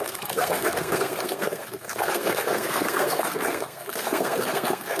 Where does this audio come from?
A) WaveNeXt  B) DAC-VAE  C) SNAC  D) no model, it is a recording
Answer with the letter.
C